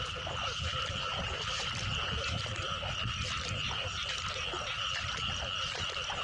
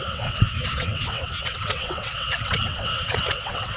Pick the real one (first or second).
first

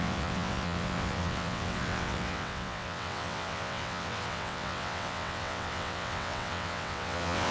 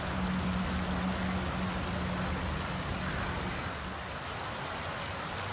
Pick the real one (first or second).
second